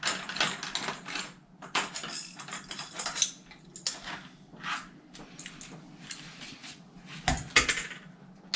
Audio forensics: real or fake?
real